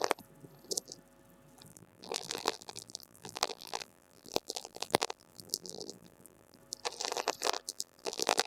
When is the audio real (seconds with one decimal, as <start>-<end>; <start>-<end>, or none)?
0.0-1.7; 6.6-7.7